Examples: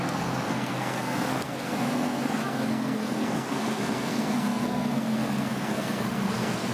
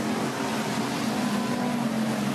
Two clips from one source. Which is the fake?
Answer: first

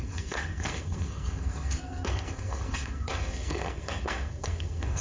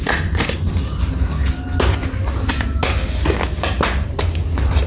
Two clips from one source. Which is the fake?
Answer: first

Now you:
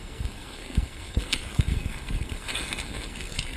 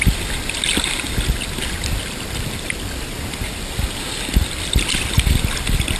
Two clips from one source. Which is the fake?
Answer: first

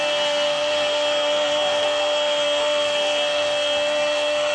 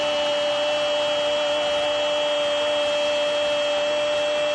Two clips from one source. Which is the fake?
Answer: first